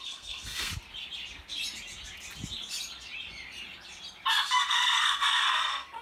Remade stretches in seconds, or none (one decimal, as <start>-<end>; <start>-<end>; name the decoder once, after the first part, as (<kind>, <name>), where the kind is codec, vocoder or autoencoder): 0.0-0.7 (codec, SNAC); 4.3-6.0